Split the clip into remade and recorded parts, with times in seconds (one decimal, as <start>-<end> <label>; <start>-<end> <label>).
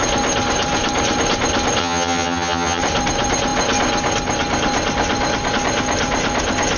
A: 0.0-1.8 recorded; 1.8-2.8 remade; 2.8-6.8 recorded